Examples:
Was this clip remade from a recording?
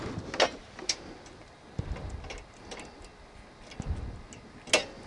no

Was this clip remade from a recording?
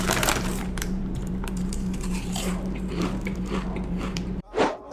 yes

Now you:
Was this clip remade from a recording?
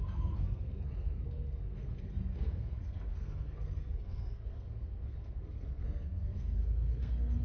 yes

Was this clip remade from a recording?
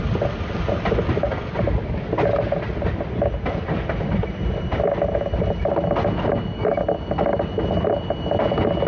no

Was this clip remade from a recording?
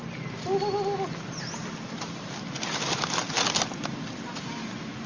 no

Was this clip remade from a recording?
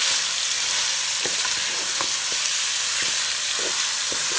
yes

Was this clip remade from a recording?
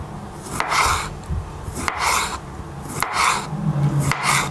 no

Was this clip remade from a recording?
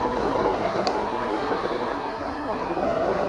yes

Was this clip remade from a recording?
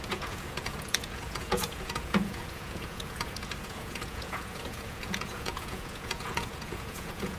yes